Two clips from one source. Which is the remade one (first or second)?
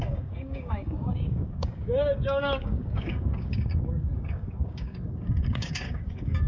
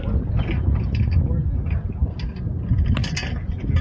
first